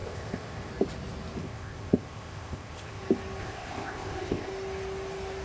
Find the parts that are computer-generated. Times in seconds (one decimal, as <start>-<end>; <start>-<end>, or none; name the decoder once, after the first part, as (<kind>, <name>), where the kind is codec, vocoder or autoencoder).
0.0-0.7 (codec, ZipCodec); 1.4-3.0; 3.4-4.5